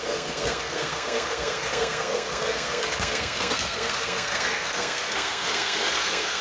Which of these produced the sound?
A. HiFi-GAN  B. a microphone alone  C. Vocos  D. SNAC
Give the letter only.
D